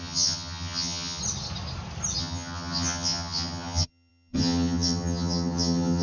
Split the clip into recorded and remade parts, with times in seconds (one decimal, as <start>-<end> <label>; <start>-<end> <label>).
0.0-1.2 remade; 1.2-2.2 recorded; 2.2-6.0 remade